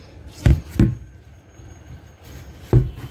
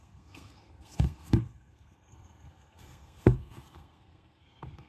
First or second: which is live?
first